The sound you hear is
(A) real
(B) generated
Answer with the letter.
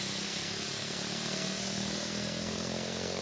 B